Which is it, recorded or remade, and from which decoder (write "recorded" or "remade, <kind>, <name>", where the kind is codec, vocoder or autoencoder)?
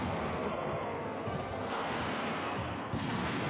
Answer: remade, codec, SNAC